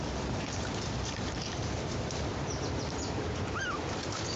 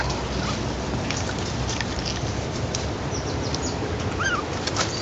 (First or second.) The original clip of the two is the second